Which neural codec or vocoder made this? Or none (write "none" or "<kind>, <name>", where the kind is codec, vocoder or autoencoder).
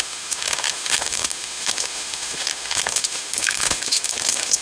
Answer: autoencoder, DAC-VAE